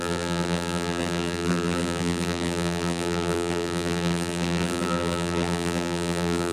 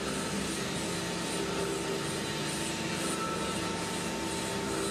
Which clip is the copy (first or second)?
first